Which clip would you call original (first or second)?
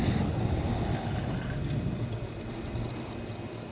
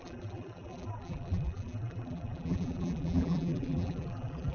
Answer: first